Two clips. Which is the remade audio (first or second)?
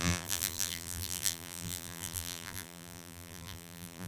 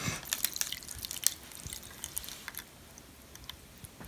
first